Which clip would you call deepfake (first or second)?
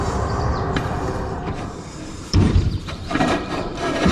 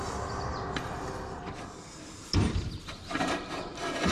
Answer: first